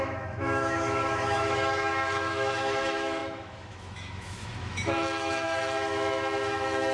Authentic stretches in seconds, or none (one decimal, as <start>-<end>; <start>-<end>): none